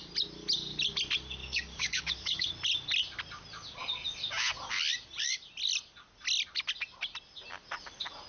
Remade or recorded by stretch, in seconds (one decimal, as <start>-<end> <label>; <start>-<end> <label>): 0.0-1.4 recorded; 1.4-2.5 remade; 2.5-8.3 recorded